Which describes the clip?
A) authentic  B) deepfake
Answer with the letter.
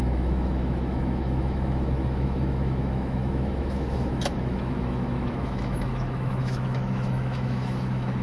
B